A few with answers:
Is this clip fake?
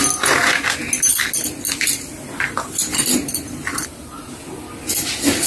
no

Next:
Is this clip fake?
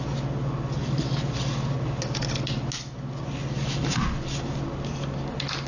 no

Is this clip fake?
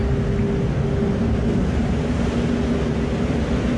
no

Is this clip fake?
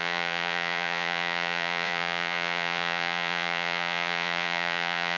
yes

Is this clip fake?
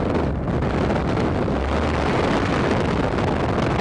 no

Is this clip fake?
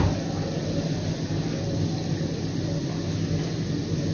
no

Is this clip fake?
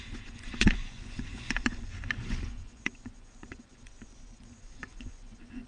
yes